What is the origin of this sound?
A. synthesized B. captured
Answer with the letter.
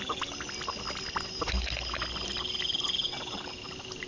B